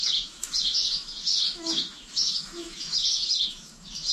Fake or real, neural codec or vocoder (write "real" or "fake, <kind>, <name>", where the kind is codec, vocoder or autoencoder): fake, autoencoder, DAC-VAE